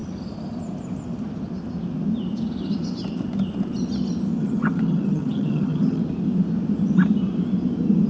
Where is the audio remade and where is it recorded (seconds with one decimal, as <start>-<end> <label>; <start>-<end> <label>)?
0.0-4.4 recorded; 4.4-6.0 remade; 6.0-8.1 recorded